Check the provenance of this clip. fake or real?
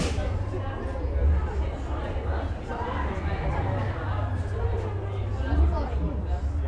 real